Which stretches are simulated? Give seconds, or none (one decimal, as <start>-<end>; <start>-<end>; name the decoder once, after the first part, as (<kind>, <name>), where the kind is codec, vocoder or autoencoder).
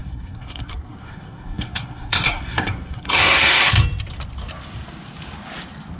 0.0-3.6 (codec, SNAC)